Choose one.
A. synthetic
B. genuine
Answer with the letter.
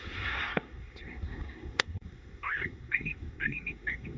A